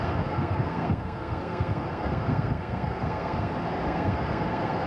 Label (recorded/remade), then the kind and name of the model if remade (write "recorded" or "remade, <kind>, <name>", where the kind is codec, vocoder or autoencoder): remade, codec, SNAC